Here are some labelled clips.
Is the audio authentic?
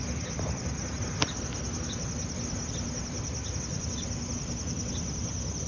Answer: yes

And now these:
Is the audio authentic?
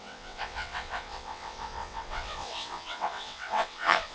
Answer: no